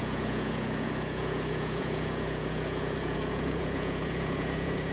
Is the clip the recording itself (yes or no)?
no